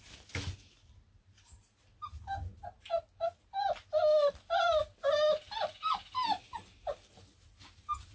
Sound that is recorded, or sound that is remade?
recorded